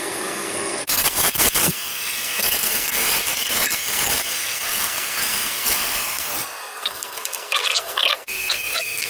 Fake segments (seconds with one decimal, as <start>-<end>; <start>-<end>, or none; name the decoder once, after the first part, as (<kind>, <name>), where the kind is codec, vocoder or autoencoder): 0.0-9.1 (codec, SNAC)